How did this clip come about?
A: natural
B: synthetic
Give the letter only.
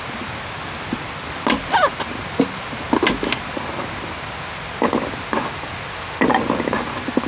A